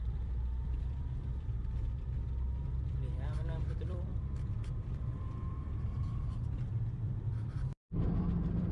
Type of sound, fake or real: fake